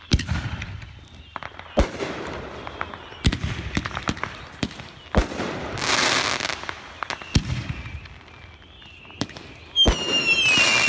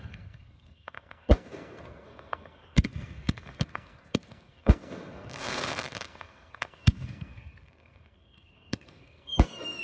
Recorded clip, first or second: first